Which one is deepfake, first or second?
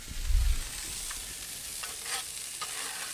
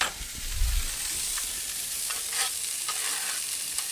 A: second